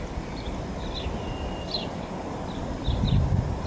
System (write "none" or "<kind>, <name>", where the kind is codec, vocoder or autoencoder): none